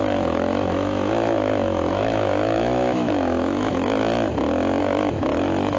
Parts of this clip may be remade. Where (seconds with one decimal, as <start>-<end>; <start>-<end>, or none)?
0.0-4.0; 4.8-5.8